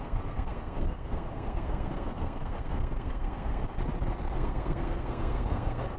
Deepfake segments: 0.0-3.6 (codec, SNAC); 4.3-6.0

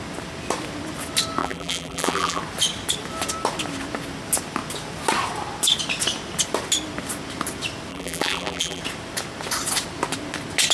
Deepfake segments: 1.4-2.4 (vocoder, BigVGAN v2); 7.9-8.8

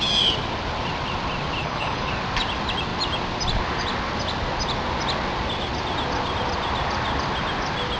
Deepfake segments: 1.6-2.1 (codec, HILCodec)